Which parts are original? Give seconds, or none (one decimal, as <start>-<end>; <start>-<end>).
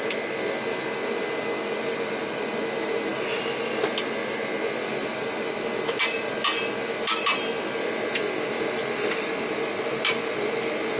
0.0-11.0